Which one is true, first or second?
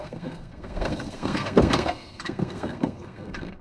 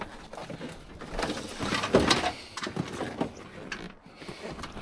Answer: second